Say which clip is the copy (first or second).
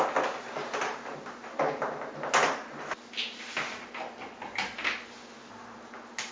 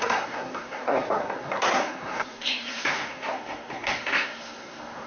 second